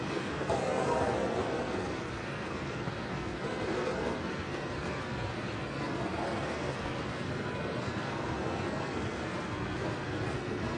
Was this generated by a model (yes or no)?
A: yes